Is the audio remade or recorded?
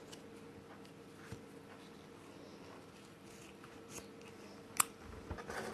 recorded